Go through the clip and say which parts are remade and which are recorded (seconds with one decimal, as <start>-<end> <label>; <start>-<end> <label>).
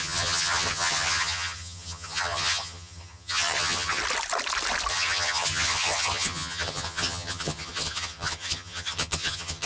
0.0-4.0 remade; 4.0-4.9 recorded; 4.9-9.7 remade